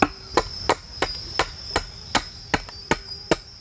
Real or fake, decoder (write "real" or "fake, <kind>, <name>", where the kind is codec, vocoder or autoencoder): real